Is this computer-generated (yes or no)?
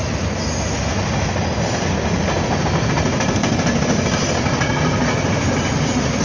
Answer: no